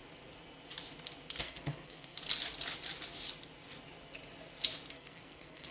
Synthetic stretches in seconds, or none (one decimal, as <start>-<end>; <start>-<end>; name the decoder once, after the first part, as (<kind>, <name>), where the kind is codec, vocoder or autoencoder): 1.4-2.2 (codec, SNAC); 4.9-5.7